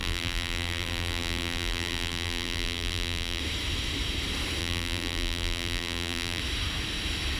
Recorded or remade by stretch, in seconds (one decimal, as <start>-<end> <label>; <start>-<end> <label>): 0.0-3.4 remade; 3.4-4.6 recorded; 4.6-6.4 remade; 6.4-7.4 recorded